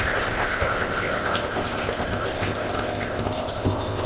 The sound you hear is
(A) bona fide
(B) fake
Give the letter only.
B